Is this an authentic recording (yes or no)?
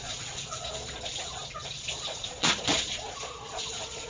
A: no